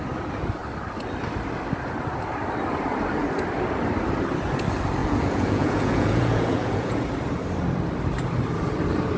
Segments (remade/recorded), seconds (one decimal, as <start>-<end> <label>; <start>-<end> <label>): 0.0-5.0 recorded; 5.0-7.0 remade; 7.0-9.2 recorded